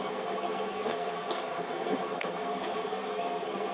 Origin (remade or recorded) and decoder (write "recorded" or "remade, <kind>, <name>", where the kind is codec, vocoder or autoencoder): remade, codec, SNAC